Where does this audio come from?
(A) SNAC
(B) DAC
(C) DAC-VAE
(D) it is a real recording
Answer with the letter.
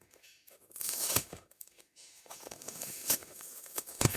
C